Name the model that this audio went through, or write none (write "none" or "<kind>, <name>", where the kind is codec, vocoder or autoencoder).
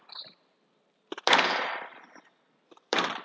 vocoder, BigVGAN v2